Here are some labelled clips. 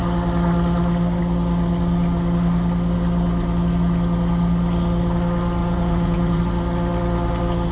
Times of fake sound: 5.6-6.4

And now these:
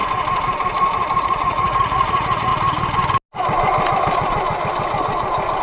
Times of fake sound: 1.2-2.5

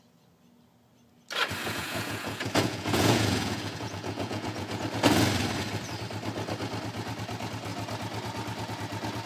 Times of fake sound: 1.6-4.8

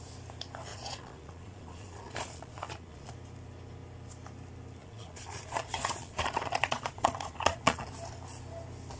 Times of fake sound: 0.7-3.1; 4.8-7.9

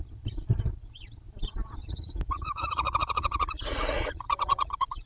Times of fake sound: 1.8-5.1

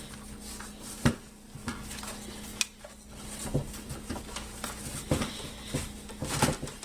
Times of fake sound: none